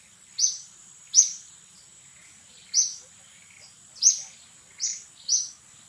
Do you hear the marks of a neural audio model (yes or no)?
no